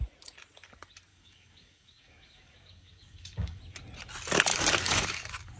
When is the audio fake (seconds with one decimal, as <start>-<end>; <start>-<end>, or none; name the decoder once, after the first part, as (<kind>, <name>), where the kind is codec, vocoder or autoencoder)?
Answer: 1.1-3.6 (codec, DAC); 4.5-5.6